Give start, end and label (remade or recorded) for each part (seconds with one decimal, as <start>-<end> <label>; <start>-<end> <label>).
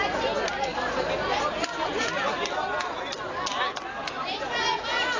0.0-5.2 recorded